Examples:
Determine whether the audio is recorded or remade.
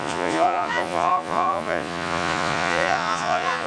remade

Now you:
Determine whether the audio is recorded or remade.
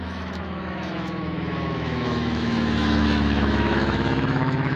remade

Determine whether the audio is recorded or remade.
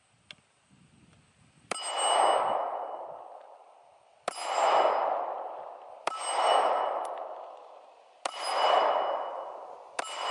recorded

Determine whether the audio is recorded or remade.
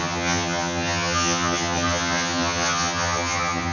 remade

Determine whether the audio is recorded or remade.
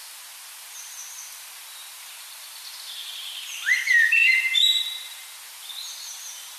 recorded